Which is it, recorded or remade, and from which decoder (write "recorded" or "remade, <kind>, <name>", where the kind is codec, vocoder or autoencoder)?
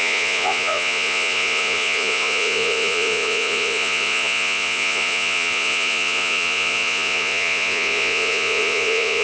remade, vocoder, Vocos